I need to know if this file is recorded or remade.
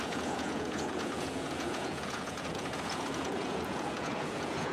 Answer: remade